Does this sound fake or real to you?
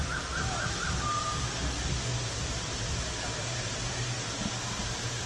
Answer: real